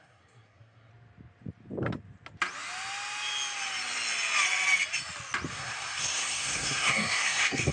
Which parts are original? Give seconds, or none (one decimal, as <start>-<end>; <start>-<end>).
0.9-5.5